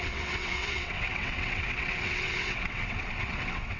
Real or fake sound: fake